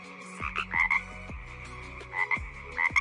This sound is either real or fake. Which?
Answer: real